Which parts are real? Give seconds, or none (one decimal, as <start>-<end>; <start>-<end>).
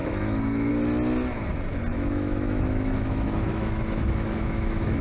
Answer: 0.7-1.9